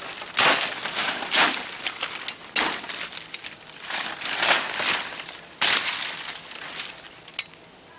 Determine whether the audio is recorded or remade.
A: recorded